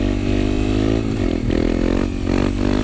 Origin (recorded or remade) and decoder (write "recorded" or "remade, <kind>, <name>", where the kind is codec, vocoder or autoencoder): recorded